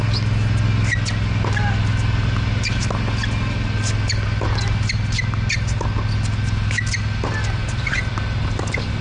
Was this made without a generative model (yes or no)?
yes